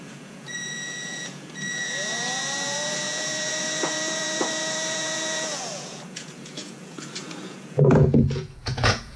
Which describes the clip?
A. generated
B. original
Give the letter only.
A